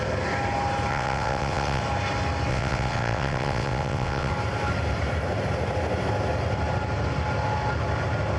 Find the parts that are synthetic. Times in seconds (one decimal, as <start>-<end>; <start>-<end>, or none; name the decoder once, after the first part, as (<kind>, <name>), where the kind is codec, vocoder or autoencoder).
0.9-1.8 (vocoder, WaveNeXt); 2.5-4.3